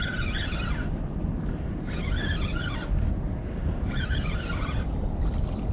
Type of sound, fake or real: real